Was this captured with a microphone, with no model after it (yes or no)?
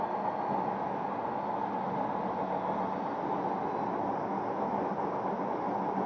yes